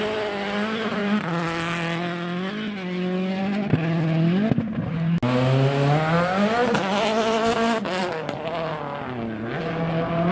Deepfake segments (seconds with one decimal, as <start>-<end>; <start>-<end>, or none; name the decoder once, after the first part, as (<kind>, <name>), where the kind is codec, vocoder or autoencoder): none